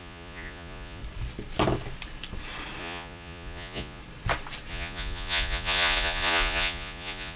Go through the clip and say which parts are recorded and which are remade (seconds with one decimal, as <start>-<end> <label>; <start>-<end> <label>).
0.0-1.0 remade; 1.0-2.8 recorded; 2.8-4.0 remade; 4.0-4.7 recorded; 4.7-7.4 remade